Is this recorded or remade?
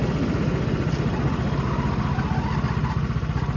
recorded